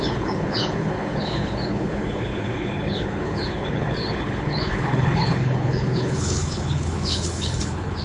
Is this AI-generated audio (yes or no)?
yes